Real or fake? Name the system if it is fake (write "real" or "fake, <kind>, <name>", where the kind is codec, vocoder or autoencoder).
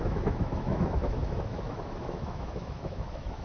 fake, autoencoder, DAC-VAE